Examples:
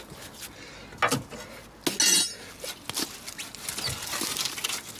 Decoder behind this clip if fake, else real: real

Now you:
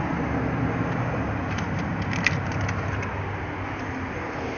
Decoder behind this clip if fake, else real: real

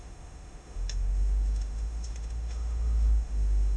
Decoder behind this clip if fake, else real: fake, autoencoder, DAC-VAE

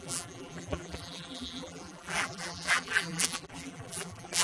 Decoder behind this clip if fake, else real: fake, vocoder, BigVGAN v2